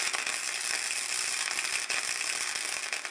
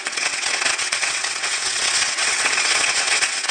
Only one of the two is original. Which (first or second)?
first